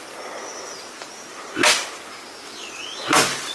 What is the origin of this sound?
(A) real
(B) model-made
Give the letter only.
A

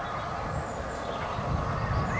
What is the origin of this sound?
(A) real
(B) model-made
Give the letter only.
A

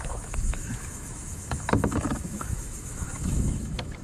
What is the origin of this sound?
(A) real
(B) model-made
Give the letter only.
B